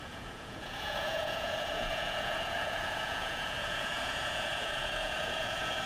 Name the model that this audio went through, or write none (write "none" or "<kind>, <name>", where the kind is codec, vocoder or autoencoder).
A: vocoder, Vocos